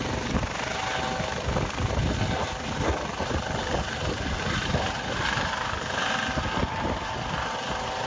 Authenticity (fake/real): real